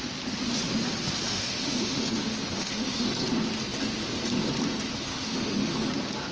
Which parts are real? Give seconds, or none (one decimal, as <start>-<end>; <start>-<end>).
0.0-1.3; 3.1-5.1; 5.7-6.3